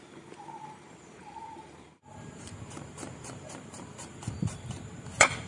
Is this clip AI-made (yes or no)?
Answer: yes